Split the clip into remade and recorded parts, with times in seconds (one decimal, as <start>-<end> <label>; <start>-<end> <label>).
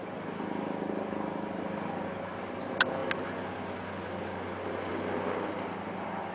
0.0-6.3 recorded